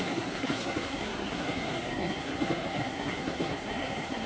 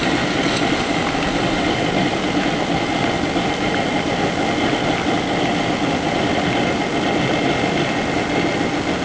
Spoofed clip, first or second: first